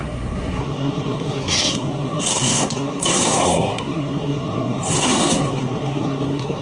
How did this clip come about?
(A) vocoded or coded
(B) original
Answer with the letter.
A